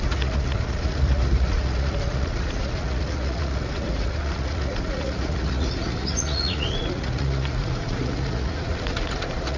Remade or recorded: remade